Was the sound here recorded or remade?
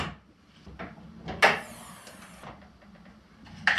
recorded